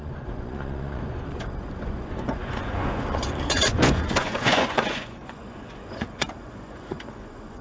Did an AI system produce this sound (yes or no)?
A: yes